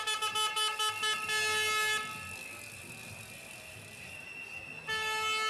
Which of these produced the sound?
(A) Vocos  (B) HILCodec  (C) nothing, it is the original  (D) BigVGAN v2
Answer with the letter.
C